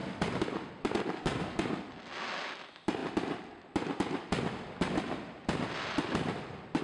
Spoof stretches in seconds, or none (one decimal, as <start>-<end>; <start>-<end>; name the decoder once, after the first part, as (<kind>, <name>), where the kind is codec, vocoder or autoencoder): none

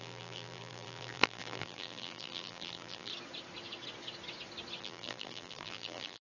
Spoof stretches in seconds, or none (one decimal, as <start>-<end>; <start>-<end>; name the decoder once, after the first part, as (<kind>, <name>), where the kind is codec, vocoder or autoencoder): 0.0-3.1 (vocoder, BigVGAN v2); 4.8-6.2